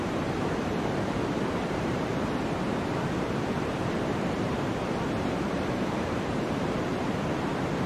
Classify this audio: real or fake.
fake